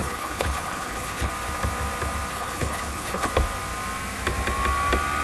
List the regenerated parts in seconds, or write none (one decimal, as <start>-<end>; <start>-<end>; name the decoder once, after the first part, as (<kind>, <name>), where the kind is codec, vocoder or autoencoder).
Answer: 0.0-1.3 (codec, HILCodec); 2.3-3.3

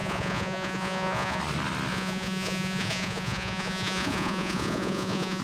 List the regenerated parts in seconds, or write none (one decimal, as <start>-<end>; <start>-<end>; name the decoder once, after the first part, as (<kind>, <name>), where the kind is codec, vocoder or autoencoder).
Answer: 0.0-1.4 (vocoder, Vocos); 1.9-5.4

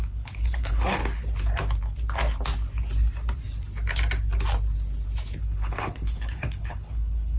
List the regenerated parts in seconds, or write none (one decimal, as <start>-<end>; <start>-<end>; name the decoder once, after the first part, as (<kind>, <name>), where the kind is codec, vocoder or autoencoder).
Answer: 0.0-1.0 (codec, HILCodec); 5.4-7.4